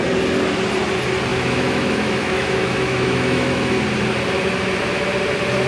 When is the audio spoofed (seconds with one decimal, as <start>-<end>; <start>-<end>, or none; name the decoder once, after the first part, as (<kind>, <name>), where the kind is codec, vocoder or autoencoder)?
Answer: 1.3-3.8 (autoencoder, DAC-VAE)